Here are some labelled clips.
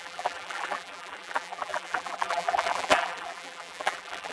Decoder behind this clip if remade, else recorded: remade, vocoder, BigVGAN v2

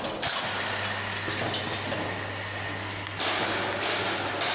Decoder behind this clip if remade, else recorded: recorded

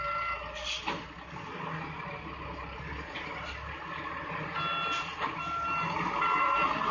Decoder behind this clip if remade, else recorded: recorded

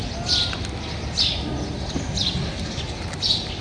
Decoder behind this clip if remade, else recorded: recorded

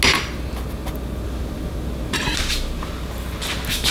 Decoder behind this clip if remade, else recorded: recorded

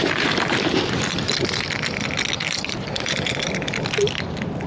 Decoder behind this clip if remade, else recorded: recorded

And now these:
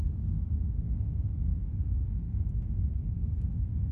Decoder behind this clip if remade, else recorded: remade, codec, SNAC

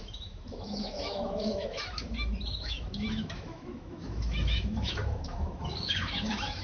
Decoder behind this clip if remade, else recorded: remade, autoencoder, DAC-VAE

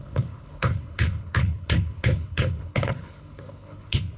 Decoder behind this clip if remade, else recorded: remade, codec, HILCodec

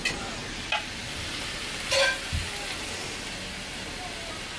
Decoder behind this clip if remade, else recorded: recorded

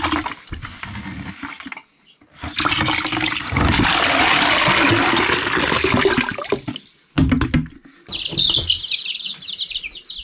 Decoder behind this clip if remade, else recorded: recorded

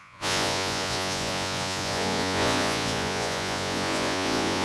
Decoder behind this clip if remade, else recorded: remade, vocoder, Vocos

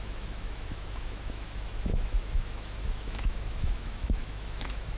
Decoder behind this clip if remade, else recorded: remade, autoencoder, DAC-VAE